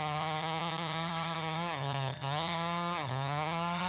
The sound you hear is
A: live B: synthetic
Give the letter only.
B